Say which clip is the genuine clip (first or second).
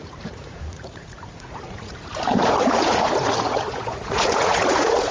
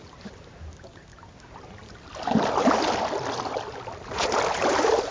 second